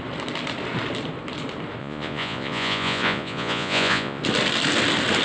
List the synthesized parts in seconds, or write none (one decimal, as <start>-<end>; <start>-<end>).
1.8-4.2